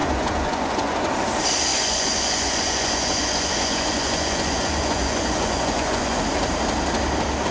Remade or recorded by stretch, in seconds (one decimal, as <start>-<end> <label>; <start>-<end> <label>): 0.0-1.1 remade; 1.1-1.7 recorded; 1.7-6.2 remade; 6.2-7.5 recorded